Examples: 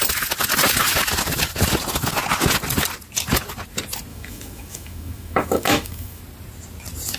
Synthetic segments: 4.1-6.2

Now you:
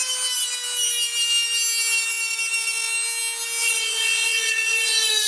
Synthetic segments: 3.6-5.3

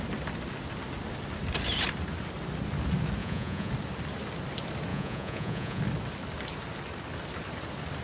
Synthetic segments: 3.2-3.7; 4.9-5.8

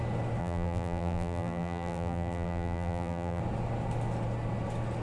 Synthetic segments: 0.4-3.4

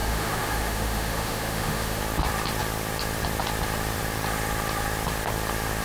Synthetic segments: 0.0-2.0

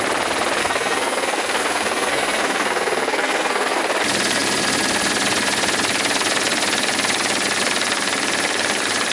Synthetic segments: 0.6-3.8